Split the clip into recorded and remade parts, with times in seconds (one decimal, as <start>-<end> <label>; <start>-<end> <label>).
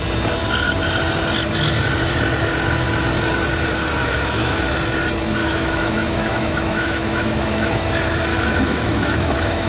0.0-4.0 recorded; 4.0-4.6 remade; 4.6-5.4 recorded; 5.4-7.9 remade; 7.9-8.3 recorded; 8.3-9.7 remade